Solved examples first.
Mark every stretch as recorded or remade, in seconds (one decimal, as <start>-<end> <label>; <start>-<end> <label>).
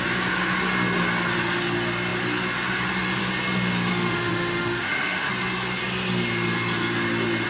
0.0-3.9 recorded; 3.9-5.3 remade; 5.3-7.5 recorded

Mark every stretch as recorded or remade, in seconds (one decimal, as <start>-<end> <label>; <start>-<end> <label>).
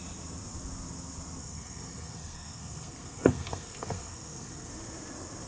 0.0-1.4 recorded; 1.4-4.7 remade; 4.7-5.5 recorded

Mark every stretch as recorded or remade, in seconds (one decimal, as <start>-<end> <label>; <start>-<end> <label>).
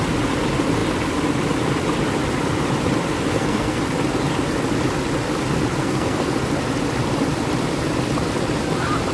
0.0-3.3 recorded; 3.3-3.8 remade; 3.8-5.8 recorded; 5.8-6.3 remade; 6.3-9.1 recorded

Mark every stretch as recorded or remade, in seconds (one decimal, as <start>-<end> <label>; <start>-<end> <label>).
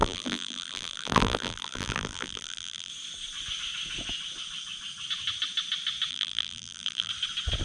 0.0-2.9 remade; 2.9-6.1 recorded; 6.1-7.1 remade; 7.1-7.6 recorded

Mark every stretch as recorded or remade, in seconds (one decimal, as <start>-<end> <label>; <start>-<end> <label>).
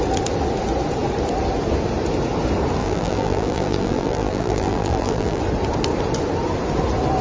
0.0-2.8 recorded; 2.8-5.4 remade; 5.4-7.2 recorded